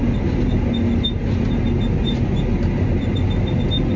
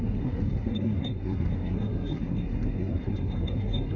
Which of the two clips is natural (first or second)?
first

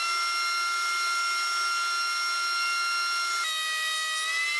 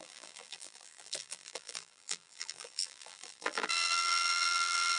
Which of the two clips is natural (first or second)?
first